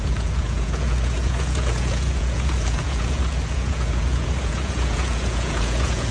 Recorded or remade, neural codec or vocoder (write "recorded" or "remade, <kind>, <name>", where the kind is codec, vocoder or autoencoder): remade, vocoder, Vocos